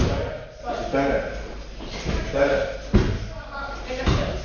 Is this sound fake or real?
real